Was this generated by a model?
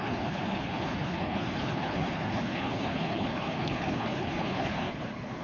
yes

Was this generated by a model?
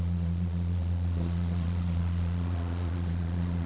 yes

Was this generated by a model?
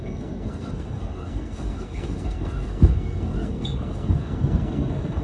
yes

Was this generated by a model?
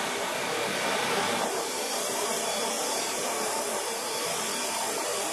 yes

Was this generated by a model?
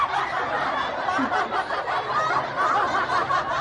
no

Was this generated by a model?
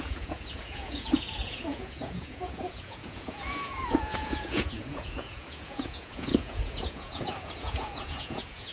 yes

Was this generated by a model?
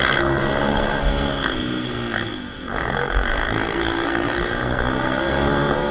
yes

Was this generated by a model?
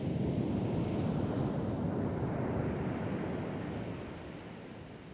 no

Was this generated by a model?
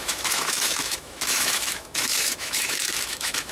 yes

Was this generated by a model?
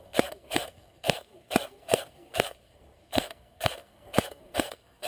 yes